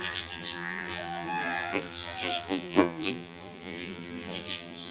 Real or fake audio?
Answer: fake